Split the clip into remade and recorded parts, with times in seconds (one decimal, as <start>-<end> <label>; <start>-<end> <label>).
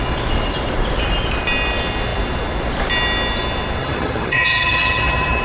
0.0-3.8 recorded; 3.8-5.4 remade